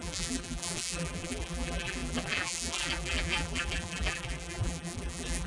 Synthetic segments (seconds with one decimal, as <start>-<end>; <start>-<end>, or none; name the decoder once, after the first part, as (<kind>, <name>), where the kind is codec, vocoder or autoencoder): 0.0-5.5 (vocoder, BigVGAN v2)